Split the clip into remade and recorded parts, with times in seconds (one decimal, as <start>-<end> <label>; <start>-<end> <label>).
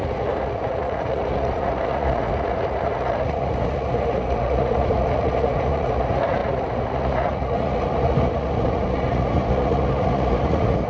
0.0-10.9 remade